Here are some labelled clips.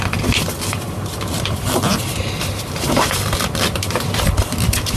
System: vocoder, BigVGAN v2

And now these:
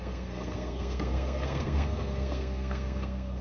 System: codec, SNAC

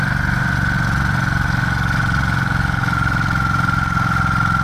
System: none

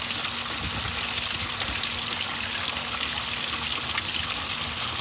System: none